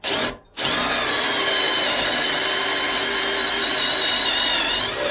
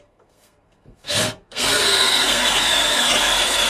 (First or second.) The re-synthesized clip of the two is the second